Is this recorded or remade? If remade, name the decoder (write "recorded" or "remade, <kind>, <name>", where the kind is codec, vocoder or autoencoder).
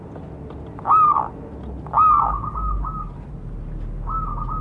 recorded